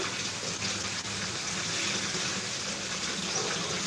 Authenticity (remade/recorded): recorded